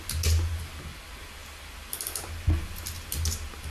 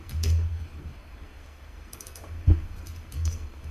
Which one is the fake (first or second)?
second